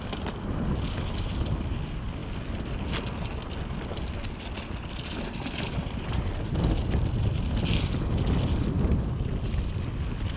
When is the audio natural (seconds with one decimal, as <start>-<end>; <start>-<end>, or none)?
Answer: 0.0-10.4